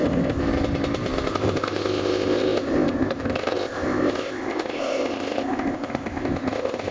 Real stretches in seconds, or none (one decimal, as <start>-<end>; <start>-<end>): 0.4-1.3